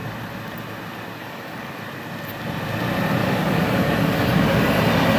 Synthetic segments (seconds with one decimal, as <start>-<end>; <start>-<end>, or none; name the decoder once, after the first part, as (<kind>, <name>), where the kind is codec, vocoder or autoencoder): 1.2-1.7 (codec, DAC); 3.2-4.6